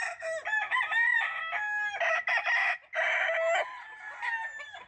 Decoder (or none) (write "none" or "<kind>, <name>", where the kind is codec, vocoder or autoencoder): none